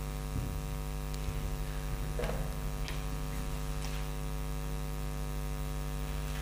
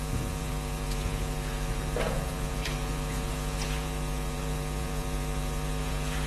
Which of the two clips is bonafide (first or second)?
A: first